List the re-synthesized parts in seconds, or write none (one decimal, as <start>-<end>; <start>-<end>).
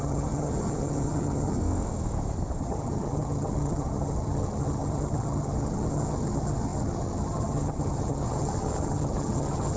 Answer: 0.0-1.6; 2.6-9.8